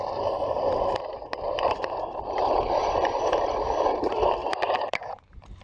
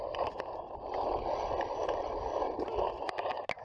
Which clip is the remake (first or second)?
first